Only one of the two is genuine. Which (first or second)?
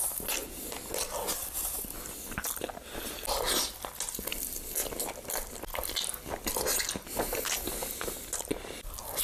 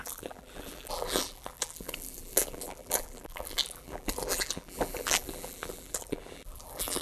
first